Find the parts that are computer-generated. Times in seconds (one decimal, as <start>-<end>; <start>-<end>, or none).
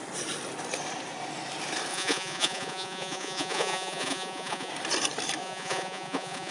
1.9-4.7; 5.4-6.5